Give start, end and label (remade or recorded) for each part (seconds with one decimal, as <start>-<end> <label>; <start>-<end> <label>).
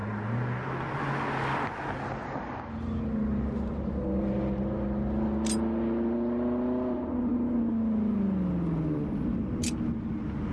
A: 0.0-10.5 recorded